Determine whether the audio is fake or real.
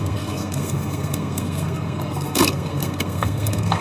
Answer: fake